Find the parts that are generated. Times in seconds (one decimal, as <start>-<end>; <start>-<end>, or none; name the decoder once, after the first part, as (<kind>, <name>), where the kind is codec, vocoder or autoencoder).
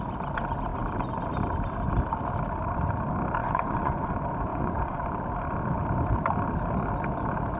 3.4-4.1 (vocoder, Vocos); 4.5-5.1